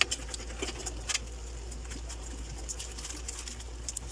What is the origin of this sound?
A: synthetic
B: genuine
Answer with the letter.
B